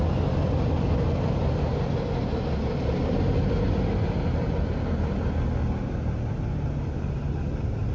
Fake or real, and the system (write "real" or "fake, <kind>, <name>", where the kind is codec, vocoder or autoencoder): real